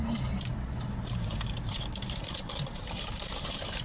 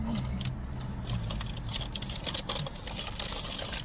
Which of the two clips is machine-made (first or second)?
first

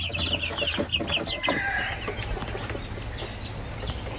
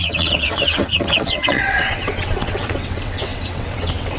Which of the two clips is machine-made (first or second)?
second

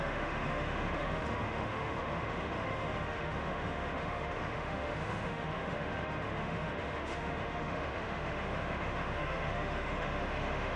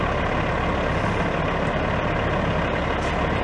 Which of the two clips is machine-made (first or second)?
first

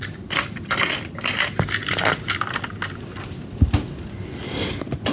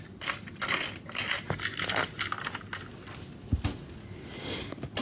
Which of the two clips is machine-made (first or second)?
first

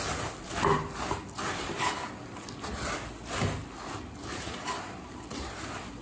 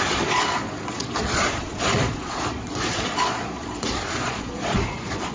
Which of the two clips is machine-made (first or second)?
second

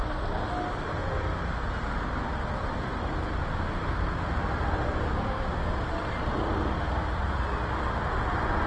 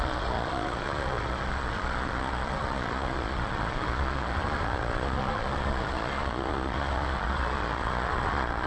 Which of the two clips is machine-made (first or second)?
second